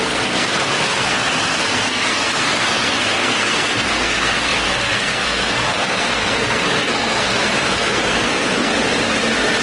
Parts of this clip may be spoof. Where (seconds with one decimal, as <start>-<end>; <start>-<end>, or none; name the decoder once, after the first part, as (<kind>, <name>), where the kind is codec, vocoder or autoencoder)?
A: 0.0-8.7 (codec, SNAC)